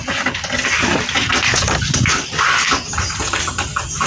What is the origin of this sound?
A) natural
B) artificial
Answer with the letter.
A